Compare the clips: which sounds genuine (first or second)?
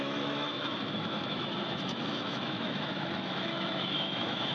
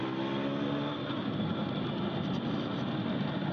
second